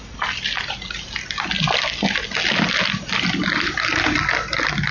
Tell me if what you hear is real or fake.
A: real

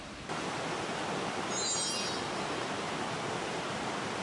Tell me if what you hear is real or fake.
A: real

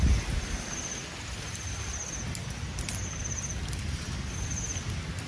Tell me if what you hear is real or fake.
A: real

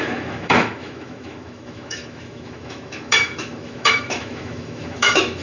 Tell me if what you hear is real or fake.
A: fake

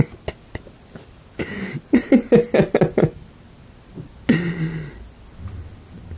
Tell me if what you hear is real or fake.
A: real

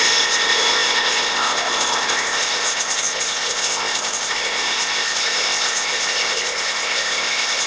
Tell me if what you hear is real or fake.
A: fake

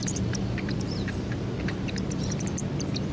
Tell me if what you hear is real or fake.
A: fake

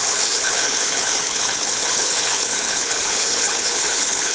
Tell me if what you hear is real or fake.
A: fake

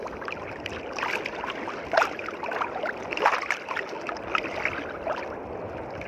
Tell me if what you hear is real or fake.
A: real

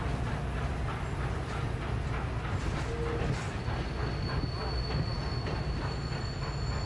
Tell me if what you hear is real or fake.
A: real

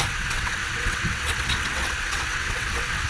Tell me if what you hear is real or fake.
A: fake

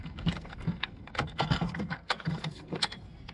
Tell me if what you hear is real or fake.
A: fake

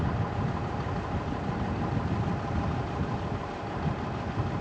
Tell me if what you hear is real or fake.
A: real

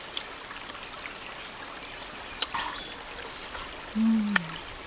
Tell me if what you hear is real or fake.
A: real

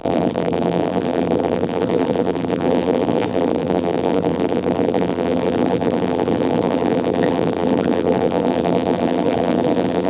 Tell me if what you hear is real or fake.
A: fake